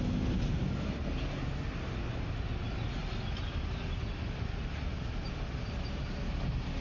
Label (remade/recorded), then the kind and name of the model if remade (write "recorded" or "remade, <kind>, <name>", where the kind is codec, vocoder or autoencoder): recorded